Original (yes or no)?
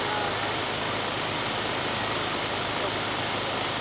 yes